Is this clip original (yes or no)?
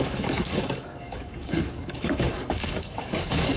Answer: no